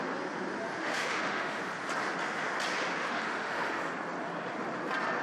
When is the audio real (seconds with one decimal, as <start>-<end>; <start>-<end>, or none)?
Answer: 0.0-0.8; 1.6-3.0; 3.9-5.2